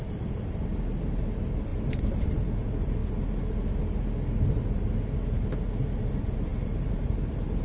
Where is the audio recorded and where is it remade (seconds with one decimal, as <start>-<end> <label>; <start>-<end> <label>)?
0.0-3.0 remade; 3.0-6.0 recorded; 6.0-7.6 remade